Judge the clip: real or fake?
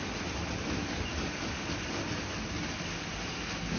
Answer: real